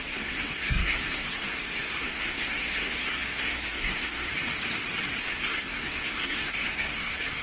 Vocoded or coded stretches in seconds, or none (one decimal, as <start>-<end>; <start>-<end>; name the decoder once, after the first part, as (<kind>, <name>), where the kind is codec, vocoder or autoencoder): 0.0-4.3 (codec, SNAC); 5.2-7.4